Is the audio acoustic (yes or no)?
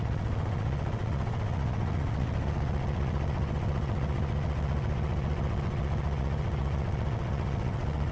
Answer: no